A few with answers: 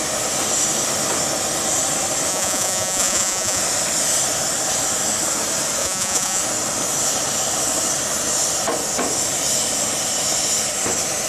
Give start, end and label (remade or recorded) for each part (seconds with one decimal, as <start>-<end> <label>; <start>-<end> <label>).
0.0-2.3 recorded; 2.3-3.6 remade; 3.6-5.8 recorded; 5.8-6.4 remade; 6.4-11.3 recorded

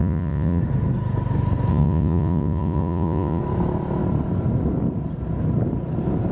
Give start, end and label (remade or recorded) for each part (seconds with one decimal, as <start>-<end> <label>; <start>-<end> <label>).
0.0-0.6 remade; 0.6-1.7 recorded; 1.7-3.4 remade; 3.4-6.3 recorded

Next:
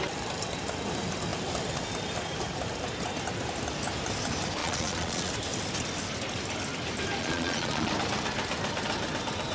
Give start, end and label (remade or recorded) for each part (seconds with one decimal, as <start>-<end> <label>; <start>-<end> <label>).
0.0-4.6 recorded; 4.6-5.3 remade; 5.3-7.2 recorded; 7.2-7.9 remade; 7.9-9.5 recorded

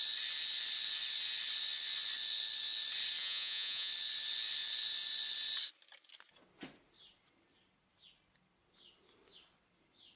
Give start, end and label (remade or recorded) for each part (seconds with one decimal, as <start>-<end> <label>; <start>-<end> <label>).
0.0-3.2 recorded; 3.2-3.9 remade; 3.9-10.2 recorded

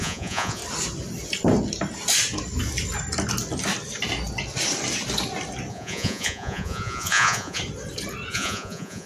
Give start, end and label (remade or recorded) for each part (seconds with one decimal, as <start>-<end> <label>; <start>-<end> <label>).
0.0-0.6 remade; 0.6-5.7 recorded; 5.7-7.6 remade; 7.6-8.3 recorded; 8.3-9.1 remade